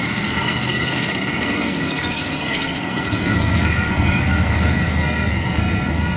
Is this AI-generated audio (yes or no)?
yes